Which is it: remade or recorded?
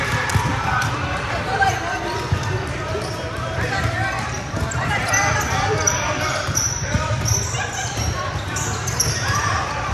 remade